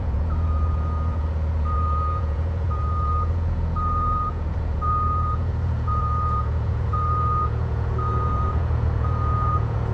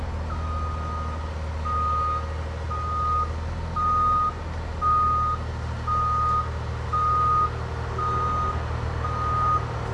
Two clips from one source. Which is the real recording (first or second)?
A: second